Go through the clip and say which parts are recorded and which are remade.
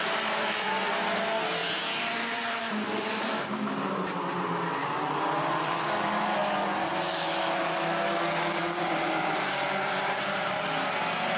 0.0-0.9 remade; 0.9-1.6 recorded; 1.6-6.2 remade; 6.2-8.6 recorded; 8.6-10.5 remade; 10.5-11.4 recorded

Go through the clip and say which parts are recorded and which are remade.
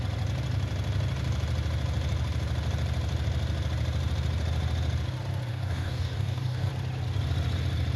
0.0-5.5 recorded; 5.5-6.7 remade; 6.7-8.0 recorded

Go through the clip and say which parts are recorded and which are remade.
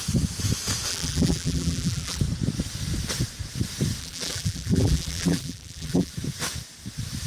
0.0-0.9 recorded; 0.9-2.2 remade; 2.2-4.0 recorded; 4.0-6.1 remade; 6.1-7.3 recorded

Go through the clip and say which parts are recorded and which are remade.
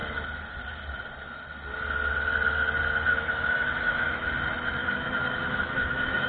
0.0-3.1 recorded; 3.1-4.3 remade; 4.3-4.8 recorded; 4.8-6.3 remade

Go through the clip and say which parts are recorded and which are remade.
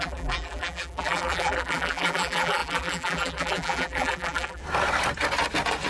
0.0-4.6 remade; 4.6-5.9 recorded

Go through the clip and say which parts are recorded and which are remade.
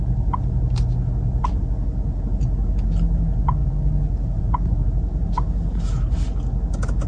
0.0-7.1 recorded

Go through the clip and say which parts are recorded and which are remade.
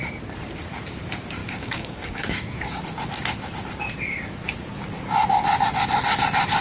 0.0-1.4 recorded; 1.4-2.8 remade; 2.8-6.6 recorded